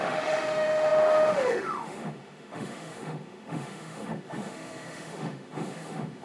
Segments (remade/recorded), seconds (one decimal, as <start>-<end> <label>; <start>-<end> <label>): 0.0-6.2 remade